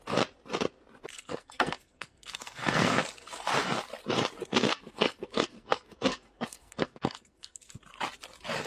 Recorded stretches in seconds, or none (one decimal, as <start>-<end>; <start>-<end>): 0.0-1.1; 3.0-4.5; 7.8-8.7